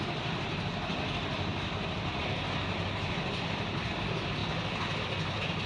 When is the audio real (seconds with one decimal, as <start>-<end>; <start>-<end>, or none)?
0.0-5.7